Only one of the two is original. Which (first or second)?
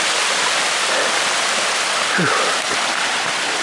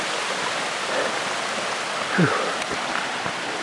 second